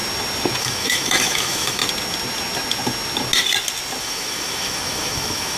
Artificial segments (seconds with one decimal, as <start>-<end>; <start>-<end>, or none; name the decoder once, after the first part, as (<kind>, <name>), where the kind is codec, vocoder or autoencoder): 0.6-1.8 (autoencoder, DAC-VAE); 4.0-5.6